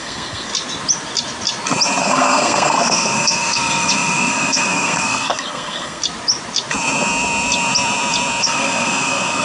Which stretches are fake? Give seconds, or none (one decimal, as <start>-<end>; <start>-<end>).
0.0-0.5; 2.0-6.0; 8.4-9.4